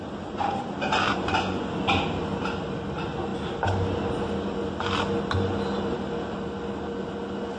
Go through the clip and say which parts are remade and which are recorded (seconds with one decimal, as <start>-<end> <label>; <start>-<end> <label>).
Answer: 0.0-1.1 recorded; 1.1-1.7 remade; 1.7-7.6 recorded